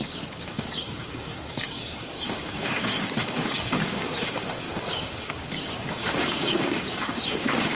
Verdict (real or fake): fake